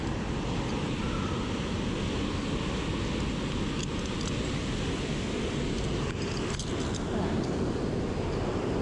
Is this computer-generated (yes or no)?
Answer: no